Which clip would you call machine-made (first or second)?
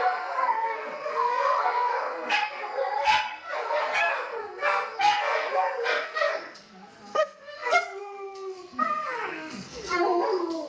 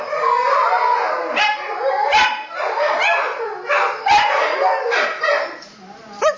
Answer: first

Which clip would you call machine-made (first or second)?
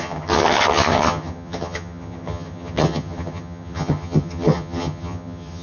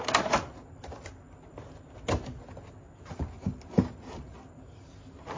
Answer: first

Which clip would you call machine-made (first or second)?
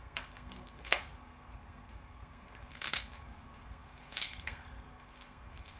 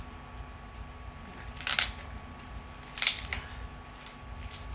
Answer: first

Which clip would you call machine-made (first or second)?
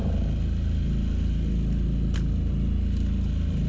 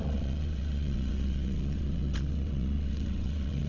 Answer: second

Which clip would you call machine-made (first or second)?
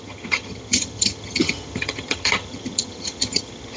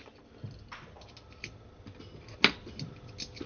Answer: first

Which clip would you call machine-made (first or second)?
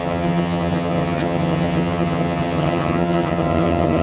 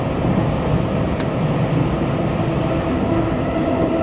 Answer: first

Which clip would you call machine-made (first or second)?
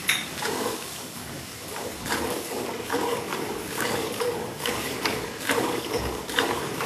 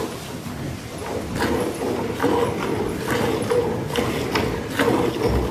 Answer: first